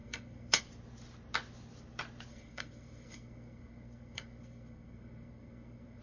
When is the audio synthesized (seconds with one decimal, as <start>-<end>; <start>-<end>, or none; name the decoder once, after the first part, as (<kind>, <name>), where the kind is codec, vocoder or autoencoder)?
0.0-0.6 (codec, SNAC); 2.3-6.0